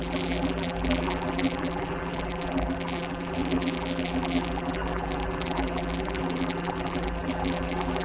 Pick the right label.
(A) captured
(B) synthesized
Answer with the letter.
B